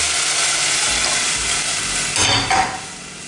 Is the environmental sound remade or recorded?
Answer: recorded